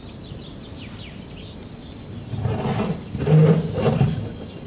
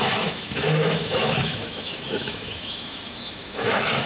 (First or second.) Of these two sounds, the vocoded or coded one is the second